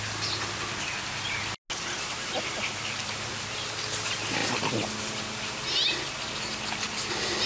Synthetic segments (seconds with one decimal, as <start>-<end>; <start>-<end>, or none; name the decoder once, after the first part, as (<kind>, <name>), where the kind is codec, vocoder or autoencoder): none